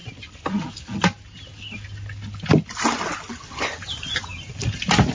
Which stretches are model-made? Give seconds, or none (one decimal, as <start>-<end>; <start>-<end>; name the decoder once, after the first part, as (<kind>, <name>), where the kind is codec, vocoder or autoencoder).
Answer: none